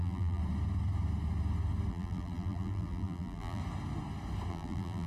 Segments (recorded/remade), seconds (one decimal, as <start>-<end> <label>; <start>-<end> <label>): 0.0-0.4 remade; 0.4-1.9 recorded; 1.9-3.6 remade; 3.6-4.5 recorded; 4.5-5.1 remade

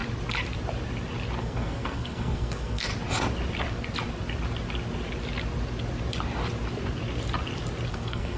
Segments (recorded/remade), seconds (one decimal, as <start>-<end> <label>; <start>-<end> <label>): 0.0-1.4 recorded; 1.4-2.9 remade; 2.9-7.9 recorded; 7.9-8.4 remade

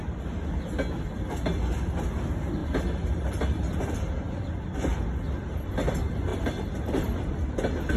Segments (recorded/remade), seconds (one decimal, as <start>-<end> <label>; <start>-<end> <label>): 0.0-2.6 recorded; 2.6-3.8 remade; 3.8-6.3 recorded; 6.3-7.3 remade; 7.3-8.0 recorded

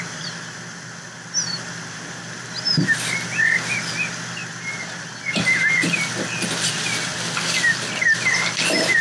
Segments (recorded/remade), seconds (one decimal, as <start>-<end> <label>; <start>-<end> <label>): 0.0-1.5 recorded; 1.5-2.2 remade; 2.2-9.0 recorded

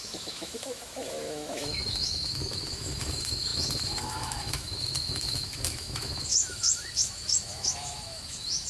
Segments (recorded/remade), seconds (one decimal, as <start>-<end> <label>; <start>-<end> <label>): 0.0-8.7 remade

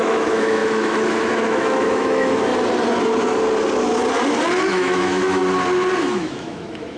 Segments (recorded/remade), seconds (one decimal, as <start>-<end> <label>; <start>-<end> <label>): 0.0-2.5 remade; 2.5-4.7 recorded; 4.7-5.4 remade; 5.4-6.0 recorded; 6.0-7.0 remade